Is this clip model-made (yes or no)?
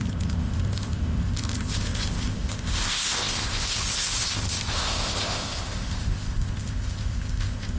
yes